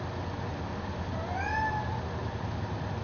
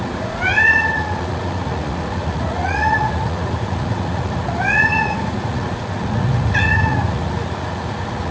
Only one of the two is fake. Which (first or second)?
second